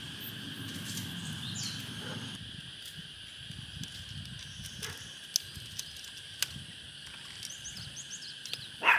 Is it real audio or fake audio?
real